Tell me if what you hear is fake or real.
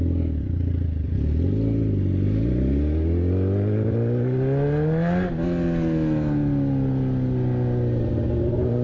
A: real